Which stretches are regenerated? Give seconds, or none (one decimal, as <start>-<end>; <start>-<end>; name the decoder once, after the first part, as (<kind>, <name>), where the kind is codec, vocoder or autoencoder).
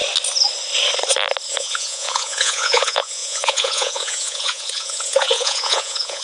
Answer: 1.5-6.2 (vocoder, Vocos)